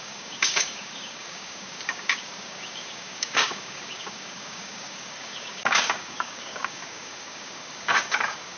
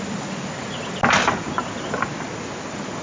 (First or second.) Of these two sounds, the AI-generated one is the first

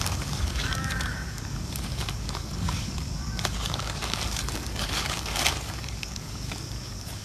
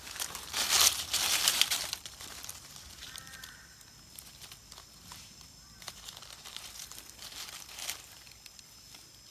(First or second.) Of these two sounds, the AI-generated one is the first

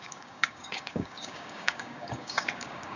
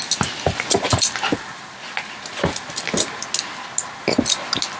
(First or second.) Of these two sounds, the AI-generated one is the first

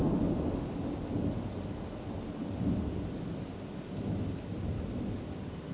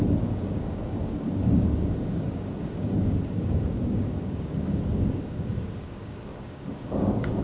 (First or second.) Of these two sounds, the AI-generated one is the second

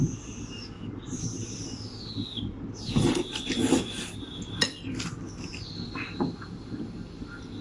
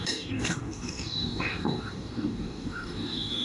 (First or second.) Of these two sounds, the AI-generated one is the second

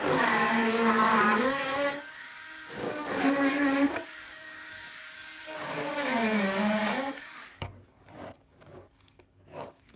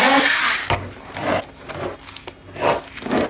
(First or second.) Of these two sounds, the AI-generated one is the first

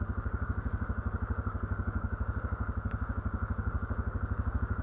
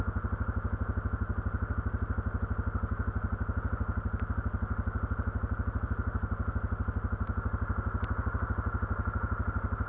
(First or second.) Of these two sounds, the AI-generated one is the first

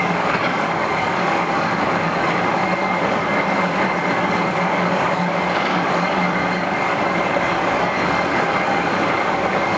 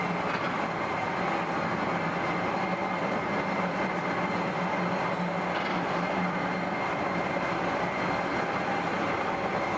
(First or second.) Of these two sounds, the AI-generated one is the first